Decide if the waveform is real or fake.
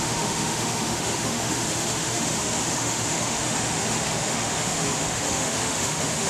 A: fake